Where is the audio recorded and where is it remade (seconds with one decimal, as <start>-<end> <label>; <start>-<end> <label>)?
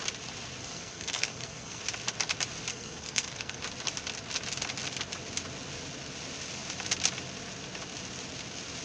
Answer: 0.0-0.6 recorded; 0.6-1.8 remade; 1.8-2.7 recorded; 2.7-3.6 remade; 3.6-8.8 recorded